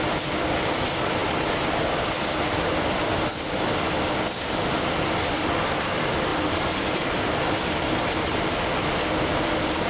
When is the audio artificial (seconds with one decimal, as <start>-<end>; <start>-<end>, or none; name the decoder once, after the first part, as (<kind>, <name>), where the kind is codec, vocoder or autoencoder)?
none